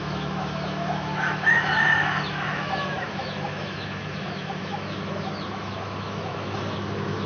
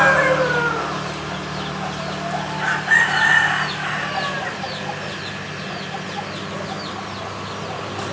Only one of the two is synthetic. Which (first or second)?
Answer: first